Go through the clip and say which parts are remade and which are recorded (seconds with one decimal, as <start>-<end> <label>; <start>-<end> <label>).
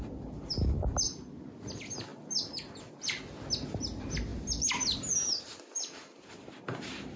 0.0-7.2 recorded